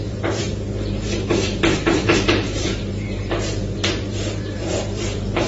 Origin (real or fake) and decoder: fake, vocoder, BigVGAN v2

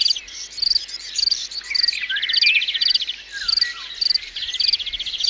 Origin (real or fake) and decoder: real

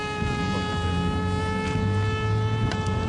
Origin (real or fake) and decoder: real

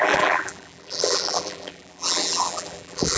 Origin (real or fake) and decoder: fake, vocoder, BigVGAN v2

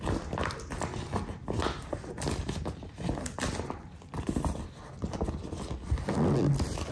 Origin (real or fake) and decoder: real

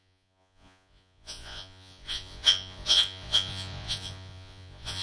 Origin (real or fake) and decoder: fake, vocoder, Vocos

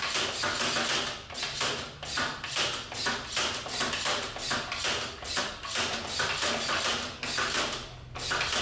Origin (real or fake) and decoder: real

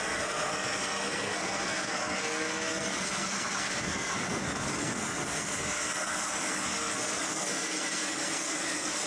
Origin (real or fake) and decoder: fake, codec, SNAC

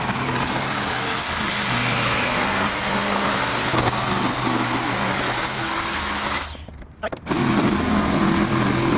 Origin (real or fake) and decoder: real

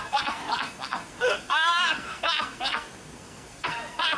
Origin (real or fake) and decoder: fake, codec, SNAC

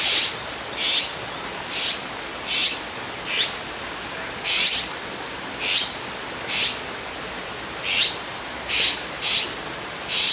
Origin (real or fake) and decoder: real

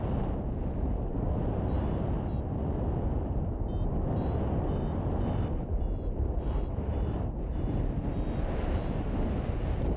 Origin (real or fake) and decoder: real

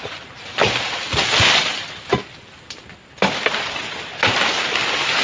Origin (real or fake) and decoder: real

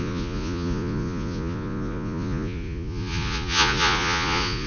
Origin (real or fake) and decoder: fake, vocoder, Vocos